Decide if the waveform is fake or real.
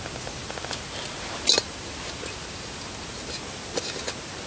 real